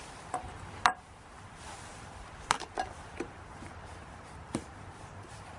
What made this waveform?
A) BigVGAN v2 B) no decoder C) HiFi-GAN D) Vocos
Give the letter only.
A